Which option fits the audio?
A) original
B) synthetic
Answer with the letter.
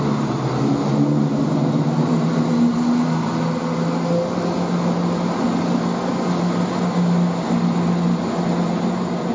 A